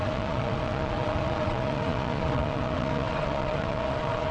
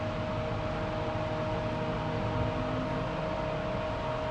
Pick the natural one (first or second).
second